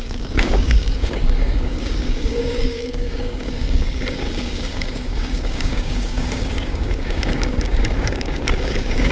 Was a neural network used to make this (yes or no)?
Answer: yes